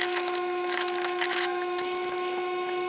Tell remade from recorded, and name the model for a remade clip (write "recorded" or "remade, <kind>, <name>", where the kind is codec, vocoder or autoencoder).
remade, autoencoder, DAC-VAE